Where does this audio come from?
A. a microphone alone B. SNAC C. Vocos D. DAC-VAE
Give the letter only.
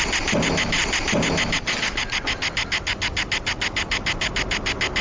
A